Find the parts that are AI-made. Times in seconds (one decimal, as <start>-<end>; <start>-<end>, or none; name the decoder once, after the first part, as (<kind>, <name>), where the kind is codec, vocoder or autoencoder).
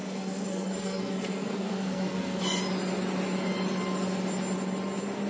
0.0-2.4 (codec, SNAC)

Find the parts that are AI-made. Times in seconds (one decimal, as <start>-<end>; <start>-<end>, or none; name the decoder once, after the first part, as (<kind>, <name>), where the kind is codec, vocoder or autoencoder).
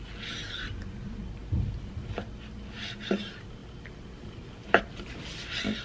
0.0-5.8 (vocoder, BigVGAN v2)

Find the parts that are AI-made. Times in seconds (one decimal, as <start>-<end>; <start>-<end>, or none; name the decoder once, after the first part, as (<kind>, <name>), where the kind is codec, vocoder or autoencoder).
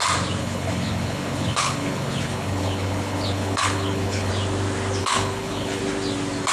0.4-4.3 (codec, HILCodec); 5.0-5.8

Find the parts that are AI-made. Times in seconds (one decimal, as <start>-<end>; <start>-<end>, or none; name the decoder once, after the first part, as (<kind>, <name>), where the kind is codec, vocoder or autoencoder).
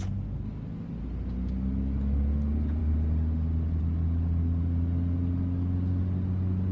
none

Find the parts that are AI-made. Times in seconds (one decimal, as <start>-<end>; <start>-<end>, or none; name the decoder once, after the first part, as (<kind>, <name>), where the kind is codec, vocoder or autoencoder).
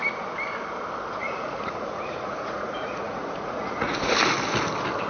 1.2-4.1 (vocoder, Vocos)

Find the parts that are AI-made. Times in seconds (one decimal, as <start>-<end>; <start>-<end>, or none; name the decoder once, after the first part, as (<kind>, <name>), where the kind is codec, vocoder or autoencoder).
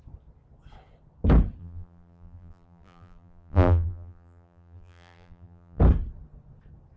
1.6-5.8 (vocoder, BigVGAN v2)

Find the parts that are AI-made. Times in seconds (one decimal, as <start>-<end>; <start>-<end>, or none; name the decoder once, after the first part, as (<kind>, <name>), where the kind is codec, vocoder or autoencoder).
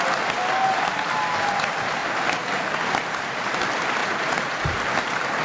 4.0-4.8 (vocoder, Vocos)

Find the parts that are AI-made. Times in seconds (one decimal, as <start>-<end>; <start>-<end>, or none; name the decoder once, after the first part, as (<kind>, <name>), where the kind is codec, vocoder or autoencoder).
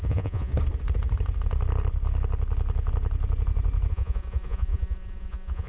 0.0-0.5 (vocoder, Vocos); 3.9-5.7